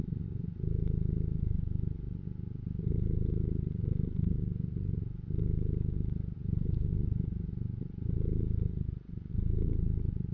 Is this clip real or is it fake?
real